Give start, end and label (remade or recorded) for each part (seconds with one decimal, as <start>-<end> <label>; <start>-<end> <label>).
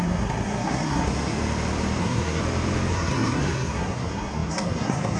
0.0-1.4 remade; 1.4-2.0 recorded; 2.0-2.4 remade; 2.4-2.9 recorded; 2.9-5.2 remade